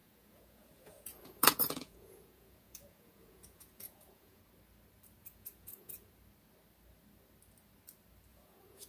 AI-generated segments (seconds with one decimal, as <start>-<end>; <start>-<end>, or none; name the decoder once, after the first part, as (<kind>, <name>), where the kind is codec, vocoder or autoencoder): 0.0-4.4 (vocoder, Vocos); 5.2-6.1; 8.3-8.9